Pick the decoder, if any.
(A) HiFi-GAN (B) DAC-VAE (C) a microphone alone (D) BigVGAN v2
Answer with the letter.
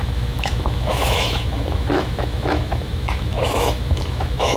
B